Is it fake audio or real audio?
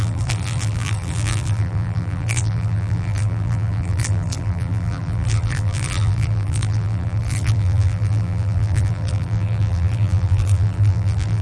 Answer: fake